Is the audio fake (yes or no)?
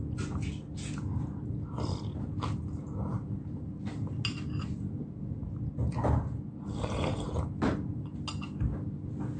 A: no